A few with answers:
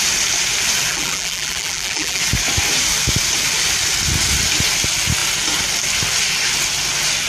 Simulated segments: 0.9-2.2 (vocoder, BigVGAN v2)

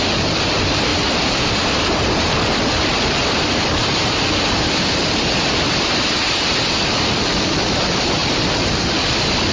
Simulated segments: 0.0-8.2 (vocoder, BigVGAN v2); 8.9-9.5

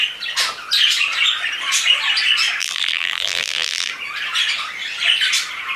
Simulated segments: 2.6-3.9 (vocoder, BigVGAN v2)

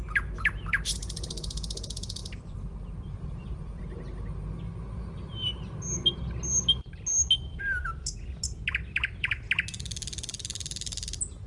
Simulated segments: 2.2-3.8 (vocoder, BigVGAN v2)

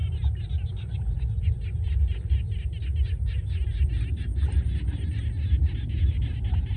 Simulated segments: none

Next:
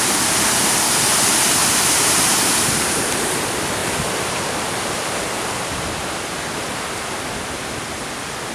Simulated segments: 1.6-3.4 (vocoder, BigVGAN v2); 3.8-5.2

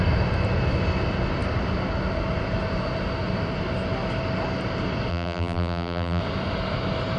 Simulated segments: 5.1-6.2 (vocoder, BigVGAN v2)